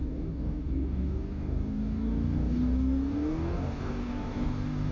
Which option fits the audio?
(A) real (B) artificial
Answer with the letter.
B